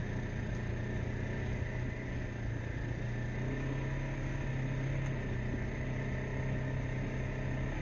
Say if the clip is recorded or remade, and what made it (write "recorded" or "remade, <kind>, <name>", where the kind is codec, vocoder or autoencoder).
recorded